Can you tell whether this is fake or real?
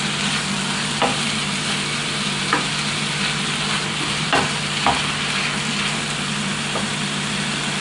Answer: real